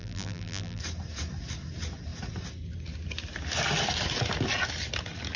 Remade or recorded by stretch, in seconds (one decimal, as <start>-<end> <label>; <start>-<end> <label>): 0.0-0.8 remade; 0.8-5.4 recorded